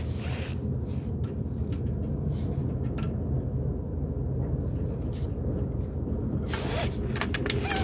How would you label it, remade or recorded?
recorded